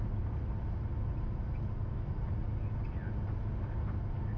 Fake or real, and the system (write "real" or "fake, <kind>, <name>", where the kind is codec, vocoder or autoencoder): real